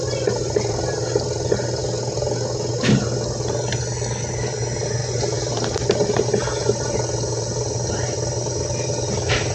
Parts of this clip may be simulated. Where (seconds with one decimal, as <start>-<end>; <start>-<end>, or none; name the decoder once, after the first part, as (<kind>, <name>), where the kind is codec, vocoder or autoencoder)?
0.0-1.8 (vocoder, BigVGAN v2); 4.2-5.0; 5.5-9.5